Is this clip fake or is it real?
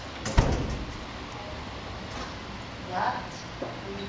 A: real